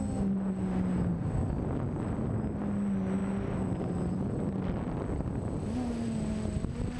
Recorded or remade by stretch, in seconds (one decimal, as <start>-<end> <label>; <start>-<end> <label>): 0.0-7.0 recorded